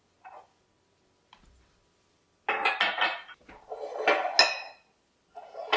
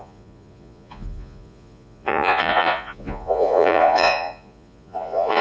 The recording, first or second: first